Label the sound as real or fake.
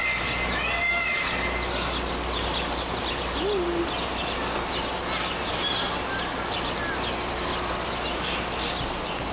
real